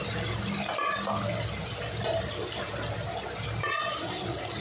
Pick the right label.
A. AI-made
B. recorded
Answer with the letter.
B